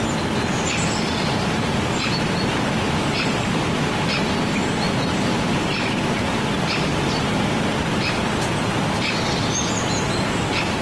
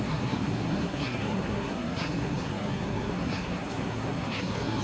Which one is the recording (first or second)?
first